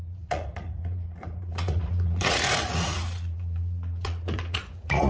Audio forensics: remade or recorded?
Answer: remade